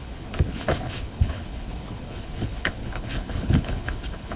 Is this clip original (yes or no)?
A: no